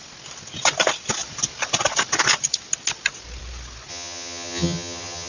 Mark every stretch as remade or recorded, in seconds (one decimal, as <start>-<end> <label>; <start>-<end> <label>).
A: 0.0-3.9 recorded; 3.9-5.3 remade